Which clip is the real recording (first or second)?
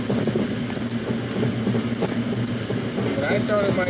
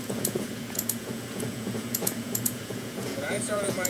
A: first